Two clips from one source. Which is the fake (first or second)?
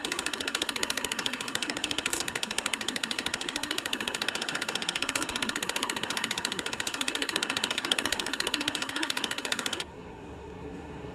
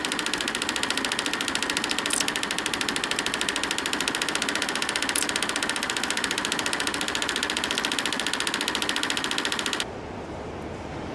first